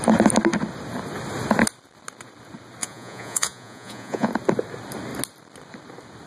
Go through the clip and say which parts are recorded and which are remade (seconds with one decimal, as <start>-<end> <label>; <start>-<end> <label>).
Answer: 0.0-2.8 recorded; 2.8-4.3 remade; 4.3-6.3 recorded